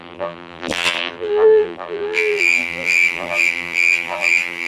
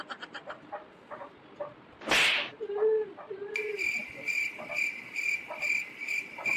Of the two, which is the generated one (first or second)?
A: first